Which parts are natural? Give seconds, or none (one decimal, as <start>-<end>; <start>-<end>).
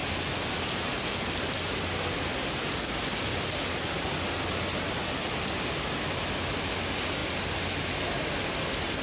0.0-9.0